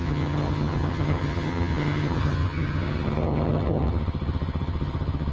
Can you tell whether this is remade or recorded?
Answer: remade